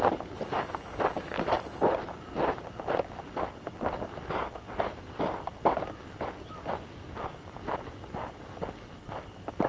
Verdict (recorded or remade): recorded